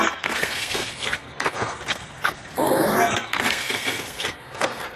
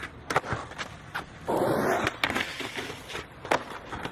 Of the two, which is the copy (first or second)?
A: first